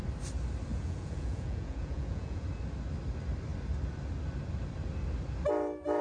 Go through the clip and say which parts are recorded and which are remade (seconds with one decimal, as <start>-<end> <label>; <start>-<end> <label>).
0.0-0.7 recorded; 0.7-2.4 remade; 2.4-6.0 recorded